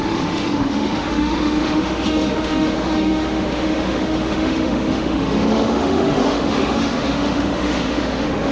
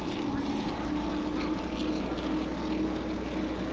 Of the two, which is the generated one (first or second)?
first